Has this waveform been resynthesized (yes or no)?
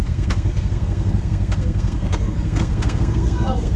yes